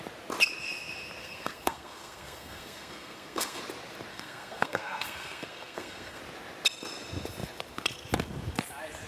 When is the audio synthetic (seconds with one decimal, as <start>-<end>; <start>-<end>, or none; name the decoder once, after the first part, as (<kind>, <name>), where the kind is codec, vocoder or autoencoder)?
1.2-3.6 (codec, SNAC); 4.1-6.2